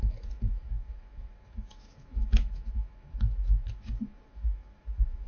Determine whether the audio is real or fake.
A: fake